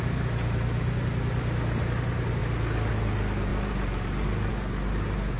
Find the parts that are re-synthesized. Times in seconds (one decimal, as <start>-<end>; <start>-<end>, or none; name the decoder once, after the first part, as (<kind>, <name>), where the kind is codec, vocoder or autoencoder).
none